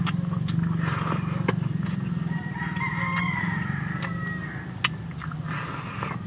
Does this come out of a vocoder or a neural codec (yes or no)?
no